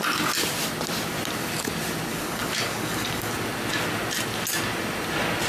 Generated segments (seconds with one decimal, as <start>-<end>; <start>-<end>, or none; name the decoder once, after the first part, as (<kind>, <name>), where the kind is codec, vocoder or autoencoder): 2.1-3.3 (codec, DAC)